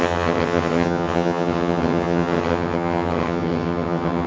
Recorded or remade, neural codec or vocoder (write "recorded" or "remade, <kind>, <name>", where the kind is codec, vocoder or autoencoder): remade, vocoder, HiFi-GAN